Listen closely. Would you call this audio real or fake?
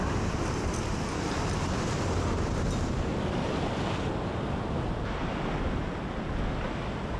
real